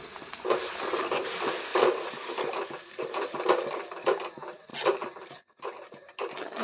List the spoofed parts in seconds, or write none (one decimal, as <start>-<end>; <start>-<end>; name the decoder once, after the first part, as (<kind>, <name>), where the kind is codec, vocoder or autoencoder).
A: 1.7-2.7 (vocoder, BigVGAN v2)